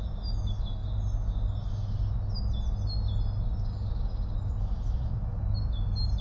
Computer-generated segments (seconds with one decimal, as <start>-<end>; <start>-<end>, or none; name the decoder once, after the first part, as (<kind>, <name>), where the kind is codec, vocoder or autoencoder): none

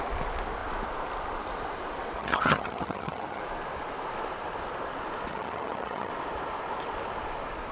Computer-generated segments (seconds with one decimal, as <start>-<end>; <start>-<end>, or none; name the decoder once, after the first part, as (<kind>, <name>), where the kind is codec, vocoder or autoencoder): 2.2-3.4 (vocoder, HiFi-GAN); 5.3-6.1

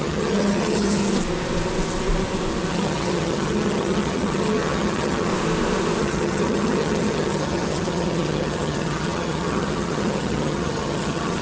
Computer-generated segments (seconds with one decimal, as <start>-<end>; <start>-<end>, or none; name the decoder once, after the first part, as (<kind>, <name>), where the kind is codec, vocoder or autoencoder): 0.0-1.0 (vocoder, HiFi-GAN); 2.7-5.3; 6.0-11.4

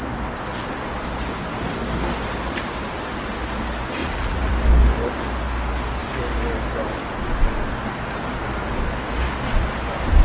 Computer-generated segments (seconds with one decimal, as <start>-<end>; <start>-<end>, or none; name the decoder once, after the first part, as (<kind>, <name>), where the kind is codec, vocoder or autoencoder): 4.0-4.5 (vocoder, Vocos)